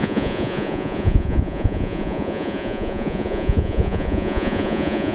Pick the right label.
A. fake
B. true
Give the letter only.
A